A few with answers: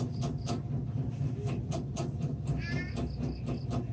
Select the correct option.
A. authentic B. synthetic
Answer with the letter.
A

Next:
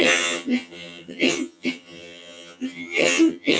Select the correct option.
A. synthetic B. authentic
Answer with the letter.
A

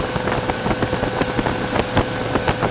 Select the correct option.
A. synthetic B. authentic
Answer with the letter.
B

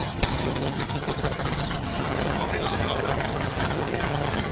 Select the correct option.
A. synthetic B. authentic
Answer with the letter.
A